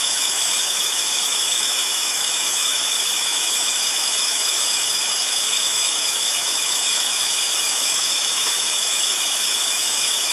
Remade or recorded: remade